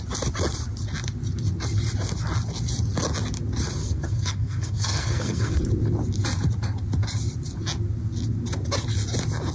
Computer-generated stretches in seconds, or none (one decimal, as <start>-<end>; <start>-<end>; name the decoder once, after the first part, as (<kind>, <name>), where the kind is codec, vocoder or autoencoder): 3.8-5.6 (codec, SNAC)